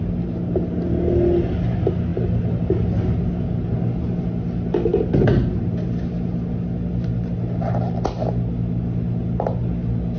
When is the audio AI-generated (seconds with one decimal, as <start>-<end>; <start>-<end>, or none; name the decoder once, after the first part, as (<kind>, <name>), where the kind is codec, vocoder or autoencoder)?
none